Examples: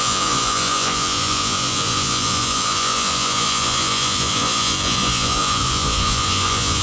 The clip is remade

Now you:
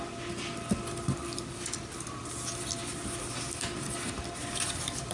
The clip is recorded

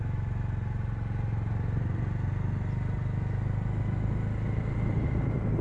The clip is recorded